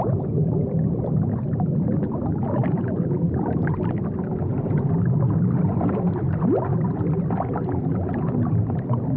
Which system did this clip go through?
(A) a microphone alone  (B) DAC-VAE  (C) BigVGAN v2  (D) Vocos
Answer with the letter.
C